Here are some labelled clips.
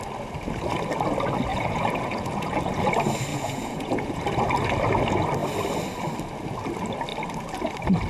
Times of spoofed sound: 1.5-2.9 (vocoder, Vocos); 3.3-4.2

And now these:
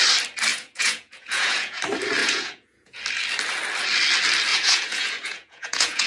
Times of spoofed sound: 0.5-1.8 (vocoder, Vocos); 2.2-3.0; 4.5-6.1

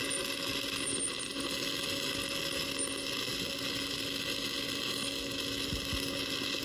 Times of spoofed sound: none